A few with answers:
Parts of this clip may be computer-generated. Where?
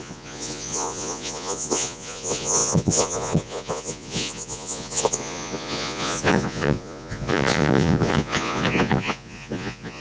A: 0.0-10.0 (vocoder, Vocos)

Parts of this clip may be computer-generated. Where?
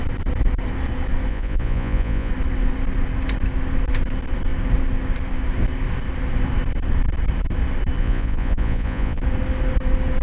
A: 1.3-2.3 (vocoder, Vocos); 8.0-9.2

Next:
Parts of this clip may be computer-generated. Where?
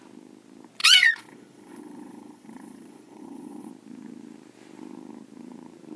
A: 0.8-3.7 (vocoder, Vocos)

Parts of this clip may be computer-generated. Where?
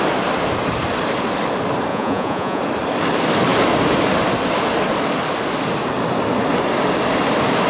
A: 1.9-2.6 (vocoder, Vocos)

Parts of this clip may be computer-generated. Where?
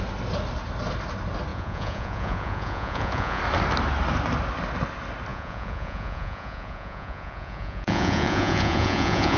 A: 1.5-3.4 (vocoder, Vocos); 5.3-9.4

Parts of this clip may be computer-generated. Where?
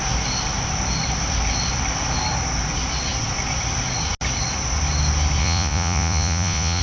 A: 5.4-6.8 (vocoder, Vocos)